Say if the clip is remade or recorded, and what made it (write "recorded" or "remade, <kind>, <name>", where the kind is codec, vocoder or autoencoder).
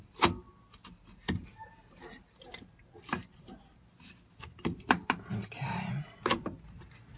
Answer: recorded